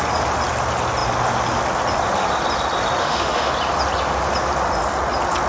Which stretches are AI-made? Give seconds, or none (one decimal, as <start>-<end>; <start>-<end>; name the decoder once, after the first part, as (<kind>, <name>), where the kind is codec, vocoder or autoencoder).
3.0-3.5 (autoencoder, DAC-VAE)